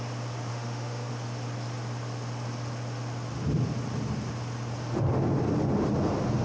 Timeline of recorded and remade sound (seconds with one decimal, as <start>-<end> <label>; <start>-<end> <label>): 0.0-0.5 recorded; 0.5-1.1 remade; 1.1-6.4 recorded